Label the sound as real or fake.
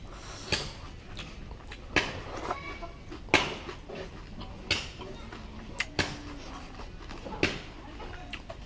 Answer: real